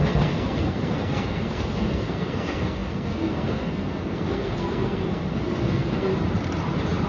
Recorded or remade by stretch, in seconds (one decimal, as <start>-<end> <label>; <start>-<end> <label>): 0.0-6.1 remade; 6.1-7.1 recorded